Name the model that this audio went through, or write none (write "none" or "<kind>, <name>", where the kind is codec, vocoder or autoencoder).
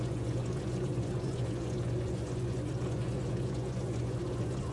vocoder, Vocos